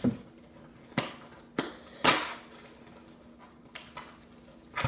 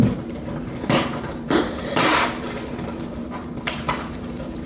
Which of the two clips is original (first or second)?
first